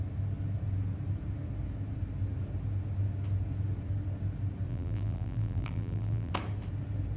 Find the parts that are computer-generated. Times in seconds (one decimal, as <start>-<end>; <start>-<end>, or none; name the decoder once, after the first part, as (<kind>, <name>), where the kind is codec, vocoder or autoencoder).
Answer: 4.7-6.3 (vocoder, BigVGAN v2)